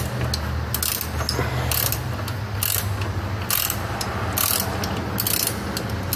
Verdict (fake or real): real